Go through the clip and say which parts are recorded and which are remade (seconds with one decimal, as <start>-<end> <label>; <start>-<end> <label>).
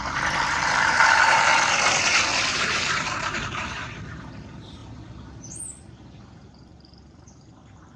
0.0-1.5 remade; 1.5-2.5 recorded; 2.5-4.8 remade; 4.8-5.6 recorded; 5.6-8.0 remade